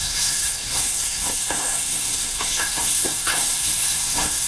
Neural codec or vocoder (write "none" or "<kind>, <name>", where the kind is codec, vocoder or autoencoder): codec, SNAC